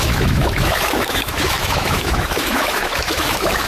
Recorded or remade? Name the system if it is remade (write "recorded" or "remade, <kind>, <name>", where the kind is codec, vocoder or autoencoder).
remade, autoencoder, DAC-VAE